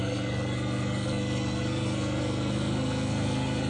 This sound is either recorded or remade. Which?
remade